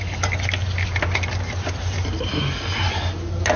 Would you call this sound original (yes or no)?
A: yes